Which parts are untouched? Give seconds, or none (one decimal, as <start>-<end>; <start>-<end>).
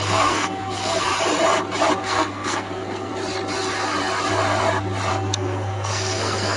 1.1-2.0; 3.1-5.1